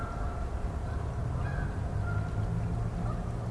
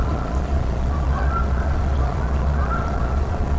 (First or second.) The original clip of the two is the first